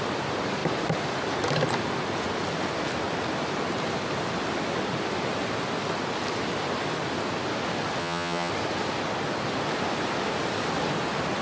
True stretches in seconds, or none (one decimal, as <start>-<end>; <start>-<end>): 0.0-8.0; 8.5-11.4